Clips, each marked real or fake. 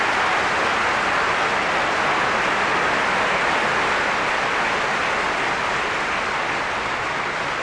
real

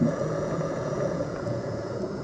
fake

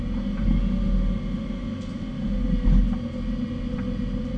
real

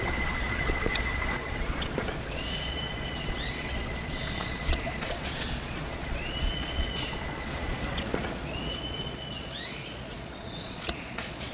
fake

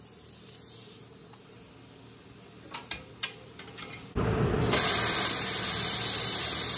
real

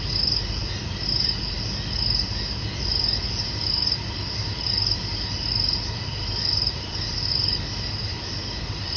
real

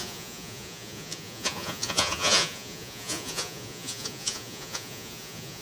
fake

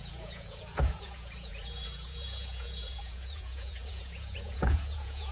fake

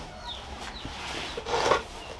real